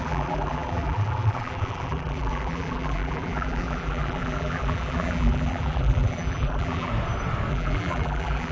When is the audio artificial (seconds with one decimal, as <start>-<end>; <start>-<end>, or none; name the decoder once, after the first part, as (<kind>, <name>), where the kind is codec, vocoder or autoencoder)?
0.0-6.9 (vocoder, BigVGAN v2); 7.5-8.5